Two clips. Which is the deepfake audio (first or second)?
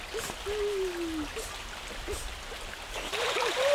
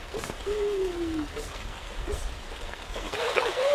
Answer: second